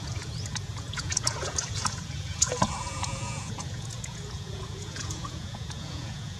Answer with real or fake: fake